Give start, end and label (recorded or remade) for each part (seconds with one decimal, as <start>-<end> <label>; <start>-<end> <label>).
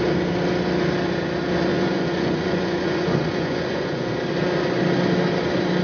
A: 0.0-1.7 recorded; 1.7-4.1 remade; 4.1-5.8 recorded